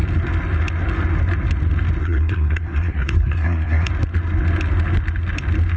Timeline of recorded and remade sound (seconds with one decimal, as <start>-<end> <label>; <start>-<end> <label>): 0.0-2.0 recorded; 2.0-3.9 remade; 3.9-5.8 recorded